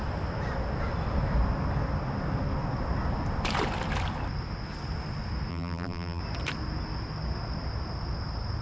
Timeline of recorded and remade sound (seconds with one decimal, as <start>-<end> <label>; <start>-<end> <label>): 0.0-5.5 recorded; 5.5-6.2 remade; 6.2-8.6 recorded